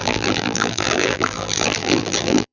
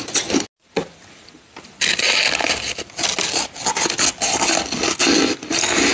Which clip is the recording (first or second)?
second